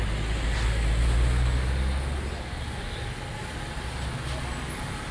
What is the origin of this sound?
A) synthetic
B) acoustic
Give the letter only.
B